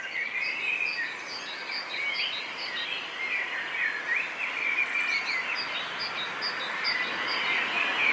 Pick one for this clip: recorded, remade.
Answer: recorded